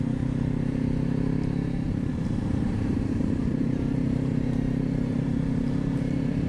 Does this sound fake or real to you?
fake